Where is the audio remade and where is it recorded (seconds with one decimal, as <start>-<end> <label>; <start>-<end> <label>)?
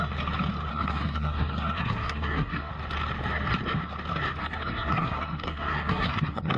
0.0-0.7 recorded; 0.7-2.7 remade; 2.7-4.4 recorded; 4.4-6.6 remade